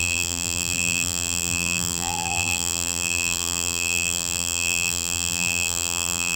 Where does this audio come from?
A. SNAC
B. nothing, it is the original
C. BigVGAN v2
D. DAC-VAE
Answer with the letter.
C